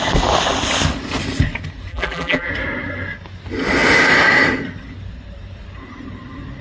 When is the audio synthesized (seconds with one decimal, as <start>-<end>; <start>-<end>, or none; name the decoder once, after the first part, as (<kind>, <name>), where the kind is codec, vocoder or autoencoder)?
1.9-2.5 (vocoder, BigVGAN v2)